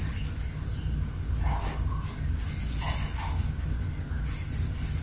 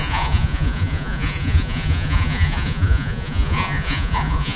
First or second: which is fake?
second